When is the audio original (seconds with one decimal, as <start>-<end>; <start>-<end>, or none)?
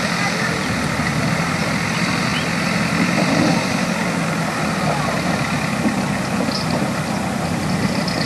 0.0-8.3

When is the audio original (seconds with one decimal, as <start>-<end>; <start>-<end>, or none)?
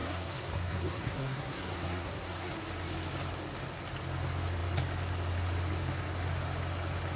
2.5-7.2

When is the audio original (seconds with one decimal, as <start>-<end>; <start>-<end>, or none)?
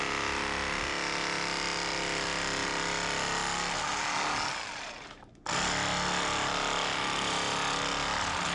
0.0-8.5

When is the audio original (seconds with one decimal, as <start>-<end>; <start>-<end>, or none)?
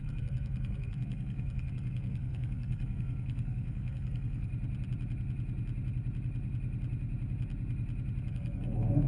4.5-8.3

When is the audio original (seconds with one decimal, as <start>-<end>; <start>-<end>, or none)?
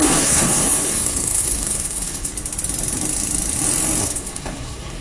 2.3-4.0